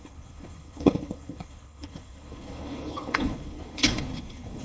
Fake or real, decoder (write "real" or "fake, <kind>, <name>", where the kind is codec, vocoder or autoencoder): fake, codec, HILCodec